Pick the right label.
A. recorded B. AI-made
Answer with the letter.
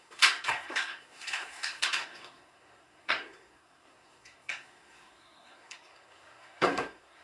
B